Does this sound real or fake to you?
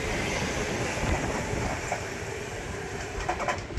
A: fake